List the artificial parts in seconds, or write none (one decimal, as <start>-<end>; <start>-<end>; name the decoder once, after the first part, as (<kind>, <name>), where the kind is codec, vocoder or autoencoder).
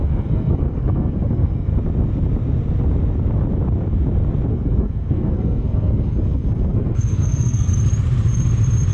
0.0-1.7 (codec, SNAC); 4.5-7.7